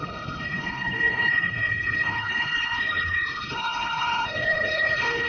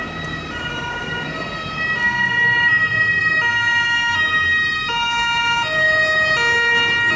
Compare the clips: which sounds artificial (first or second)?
first